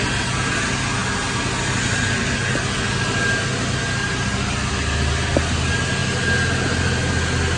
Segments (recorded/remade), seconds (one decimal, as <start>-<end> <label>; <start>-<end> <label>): 0.0-7.6 recorded